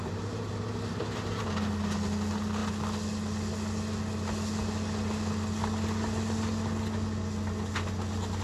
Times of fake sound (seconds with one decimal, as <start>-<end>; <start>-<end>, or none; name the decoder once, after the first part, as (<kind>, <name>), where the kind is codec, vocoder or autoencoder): 0.0-1.4 (vocoder, BigVGAN v2)